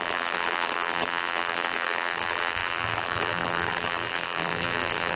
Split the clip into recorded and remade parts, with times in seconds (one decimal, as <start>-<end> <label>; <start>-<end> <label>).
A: 0.0-5.2 remade

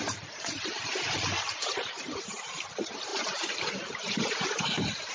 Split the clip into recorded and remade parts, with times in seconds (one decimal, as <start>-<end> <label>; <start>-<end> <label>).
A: 0.0-5.1 remade

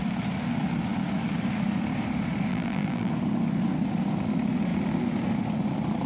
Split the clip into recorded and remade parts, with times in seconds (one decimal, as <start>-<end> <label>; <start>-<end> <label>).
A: 0.0-2.5 recorded; 2.5-3.1 remade; 3.1-6.1 recorded

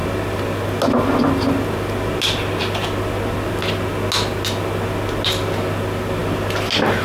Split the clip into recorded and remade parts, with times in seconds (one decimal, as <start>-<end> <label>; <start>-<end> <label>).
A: 0.0-7.0 recorded